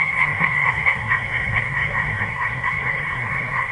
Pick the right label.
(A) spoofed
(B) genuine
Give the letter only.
A